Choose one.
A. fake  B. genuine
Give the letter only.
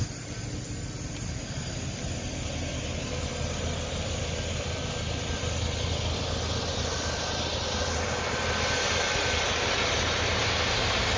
B